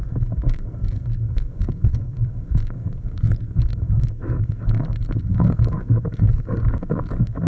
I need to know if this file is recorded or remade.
remade